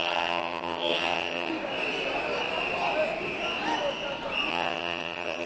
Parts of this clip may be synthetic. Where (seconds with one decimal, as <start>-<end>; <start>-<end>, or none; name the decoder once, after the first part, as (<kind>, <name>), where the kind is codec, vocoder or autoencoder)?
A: 0.0-1.5 (vocoder, HiFi-GAN); 4.5-5.5